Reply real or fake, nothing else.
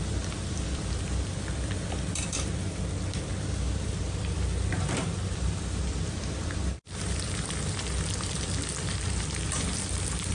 fake